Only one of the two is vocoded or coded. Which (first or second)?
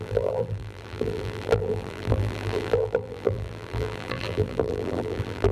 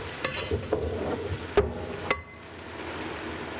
first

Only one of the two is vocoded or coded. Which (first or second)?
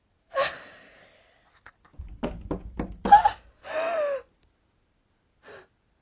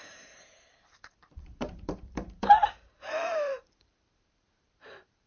second